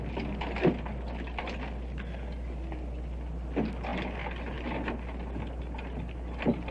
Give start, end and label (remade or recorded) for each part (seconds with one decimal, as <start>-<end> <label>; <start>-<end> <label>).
0.0-6.7 recorded

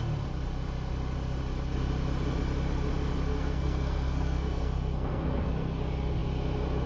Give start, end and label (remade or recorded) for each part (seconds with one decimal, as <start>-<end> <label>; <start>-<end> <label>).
0.0-3.3 recorded; 3.3-5.8 remade; 5.8-6.9 recorded

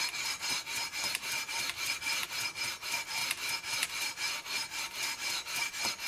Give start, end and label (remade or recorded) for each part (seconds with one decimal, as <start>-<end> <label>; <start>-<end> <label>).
0.0-6.1 recorded

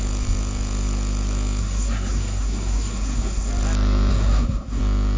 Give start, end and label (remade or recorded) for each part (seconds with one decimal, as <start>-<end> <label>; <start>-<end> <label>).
0.0-1.6 recorded; 1.6-3.5 remade; 3.5-4.1 recorded; 4.1-4.8 remade; 4.8-5.2 recorded